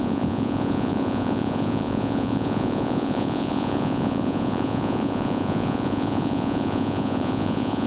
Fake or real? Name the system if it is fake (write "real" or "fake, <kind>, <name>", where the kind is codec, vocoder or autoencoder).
fake, vocoder, Vocos